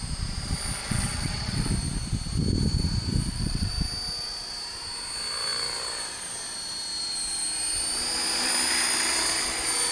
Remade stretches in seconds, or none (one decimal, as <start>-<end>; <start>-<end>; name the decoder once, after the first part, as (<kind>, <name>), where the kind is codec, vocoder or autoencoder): 0.8-1.7 (vocoder, WaveNeXt); 3.2-3.7